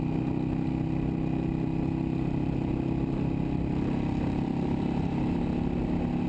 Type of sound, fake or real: real